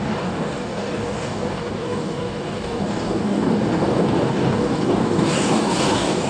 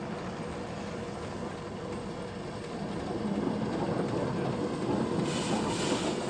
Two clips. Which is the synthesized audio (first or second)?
first